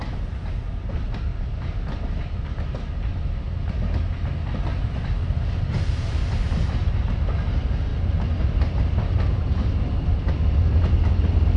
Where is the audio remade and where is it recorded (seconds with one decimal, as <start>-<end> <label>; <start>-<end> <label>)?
0.0-11.6 recorded